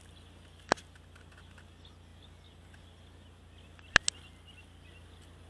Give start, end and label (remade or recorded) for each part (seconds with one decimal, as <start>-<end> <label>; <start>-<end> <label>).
0.0-5.5 recorded